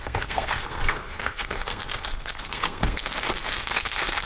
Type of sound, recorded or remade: remade